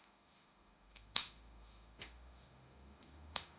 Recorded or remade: remade